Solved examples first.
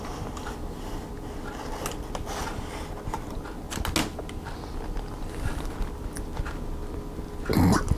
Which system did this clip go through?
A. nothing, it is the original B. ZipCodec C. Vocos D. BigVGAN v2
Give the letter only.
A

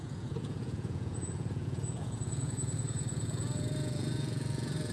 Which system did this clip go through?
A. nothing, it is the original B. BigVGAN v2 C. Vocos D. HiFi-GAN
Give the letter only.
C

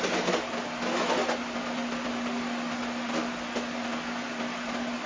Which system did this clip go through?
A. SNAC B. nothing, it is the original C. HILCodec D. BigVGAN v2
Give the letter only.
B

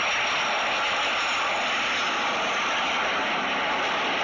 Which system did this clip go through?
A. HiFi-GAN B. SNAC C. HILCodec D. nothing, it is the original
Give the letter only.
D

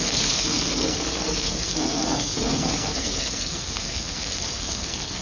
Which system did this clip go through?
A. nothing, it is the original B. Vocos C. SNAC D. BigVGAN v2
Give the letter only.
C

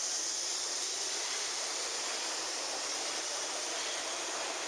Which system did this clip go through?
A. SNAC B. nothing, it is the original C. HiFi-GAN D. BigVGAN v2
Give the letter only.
D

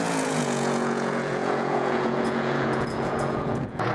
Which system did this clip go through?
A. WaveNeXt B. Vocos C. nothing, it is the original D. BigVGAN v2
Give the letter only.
B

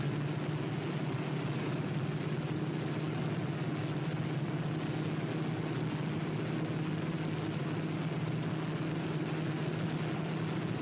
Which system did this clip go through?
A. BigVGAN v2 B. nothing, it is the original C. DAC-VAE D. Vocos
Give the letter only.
B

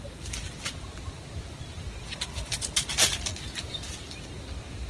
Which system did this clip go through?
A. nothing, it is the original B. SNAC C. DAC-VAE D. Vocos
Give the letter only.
A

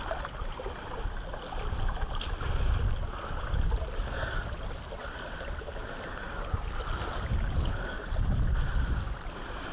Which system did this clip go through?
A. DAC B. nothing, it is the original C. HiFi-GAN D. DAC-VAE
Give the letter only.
B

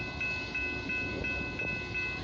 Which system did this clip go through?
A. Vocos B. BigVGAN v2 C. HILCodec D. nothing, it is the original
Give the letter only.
D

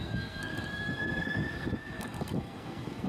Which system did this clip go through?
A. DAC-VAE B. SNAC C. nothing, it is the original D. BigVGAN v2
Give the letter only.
B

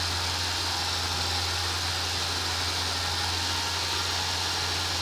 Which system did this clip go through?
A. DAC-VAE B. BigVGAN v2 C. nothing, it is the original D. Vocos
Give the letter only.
C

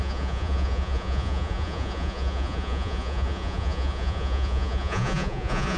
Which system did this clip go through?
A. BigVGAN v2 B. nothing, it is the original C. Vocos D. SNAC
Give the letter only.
C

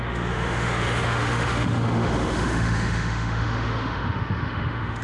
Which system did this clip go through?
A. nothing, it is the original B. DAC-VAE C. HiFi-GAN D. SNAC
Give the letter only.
B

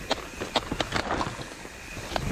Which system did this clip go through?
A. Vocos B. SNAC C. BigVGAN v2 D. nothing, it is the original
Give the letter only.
D